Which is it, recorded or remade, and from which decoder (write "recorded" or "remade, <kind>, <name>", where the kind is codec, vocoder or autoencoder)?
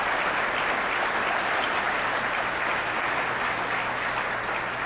recorded